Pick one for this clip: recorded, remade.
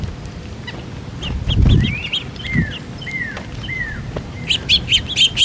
recorded